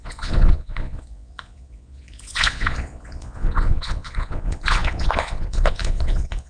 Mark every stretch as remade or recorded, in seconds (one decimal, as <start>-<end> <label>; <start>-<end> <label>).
0.0-6.5 remade